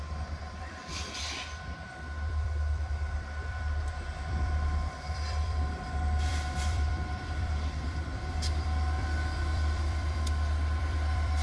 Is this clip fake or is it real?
fake